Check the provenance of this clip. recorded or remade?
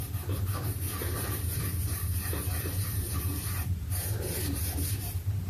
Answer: remade